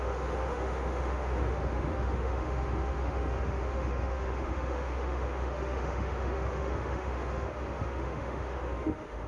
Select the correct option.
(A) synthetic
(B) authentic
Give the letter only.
A